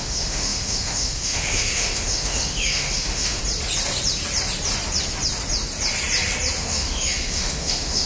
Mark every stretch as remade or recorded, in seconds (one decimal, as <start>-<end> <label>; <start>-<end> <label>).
0.0-3.4 remade; 3.4-6.6 recorded; 6.6-8.1 remade